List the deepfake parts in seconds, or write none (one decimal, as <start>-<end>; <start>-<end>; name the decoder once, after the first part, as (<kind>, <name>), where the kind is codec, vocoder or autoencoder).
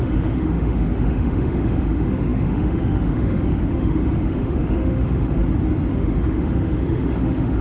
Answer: 0.0-5.4 (autoencoder, DAC-VAE); 5.9-7.6